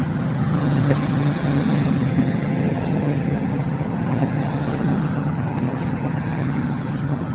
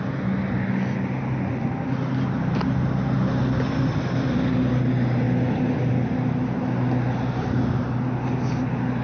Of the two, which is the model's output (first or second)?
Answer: first